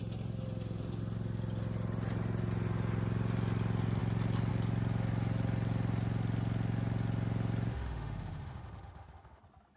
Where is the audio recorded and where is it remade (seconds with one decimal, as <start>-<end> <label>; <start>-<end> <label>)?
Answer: 0.0-7.7 recorded; 7.7-9.4 remade; 9.4-9.8 recorded